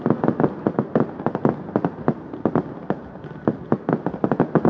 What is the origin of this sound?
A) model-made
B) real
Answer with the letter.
B